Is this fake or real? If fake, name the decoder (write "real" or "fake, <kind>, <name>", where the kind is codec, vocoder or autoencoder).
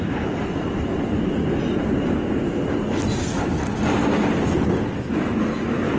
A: real